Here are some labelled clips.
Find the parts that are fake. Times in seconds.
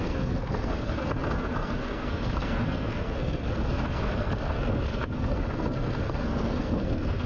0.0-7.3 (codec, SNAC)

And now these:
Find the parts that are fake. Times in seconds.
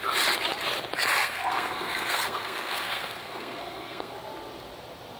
1.2-4.1 (codec, SNAC)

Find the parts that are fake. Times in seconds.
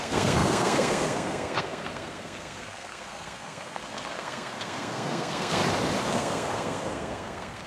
0.0-5.6 (codec, SNAC); 6.1-7.7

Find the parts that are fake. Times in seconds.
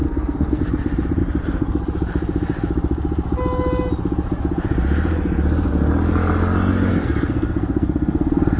0.0-0.6 (codec, SNAC); 6.9-8.6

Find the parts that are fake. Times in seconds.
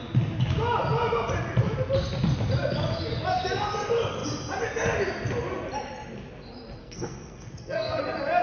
6.8-8.0 (codec, SNAC)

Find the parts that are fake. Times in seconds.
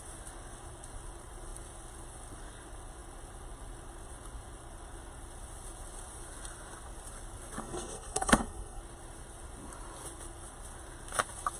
7.6-8.8 (codec, SNAC)